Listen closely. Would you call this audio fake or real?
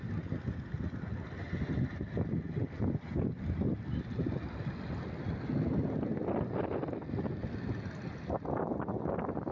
real